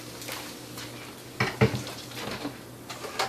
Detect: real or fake real